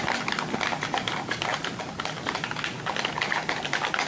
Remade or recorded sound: recorded